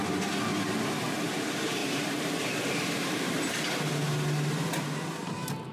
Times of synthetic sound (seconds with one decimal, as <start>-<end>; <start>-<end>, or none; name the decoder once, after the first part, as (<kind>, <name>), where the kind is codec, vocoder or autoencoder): 1.8-3.9 (vocoder, BigVGAN v2)